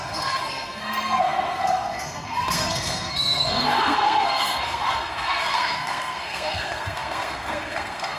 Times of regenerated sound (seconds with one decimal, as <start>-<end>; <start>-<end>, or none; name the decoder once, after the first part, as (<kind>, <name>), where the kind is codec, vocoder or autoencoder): 0.0-8.2 (codec, SNAC)